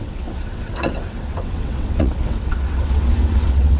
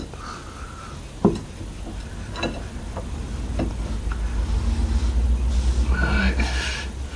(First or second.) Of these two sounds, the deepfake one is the first